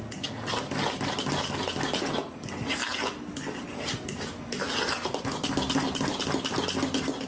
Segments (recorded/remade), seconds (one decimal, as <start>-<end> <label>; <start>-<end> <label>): 0.0-7.3 recorded